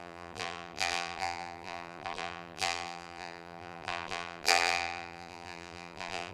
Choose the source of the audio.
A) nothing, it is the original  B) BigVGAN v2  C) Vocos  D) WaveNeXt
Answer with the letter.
B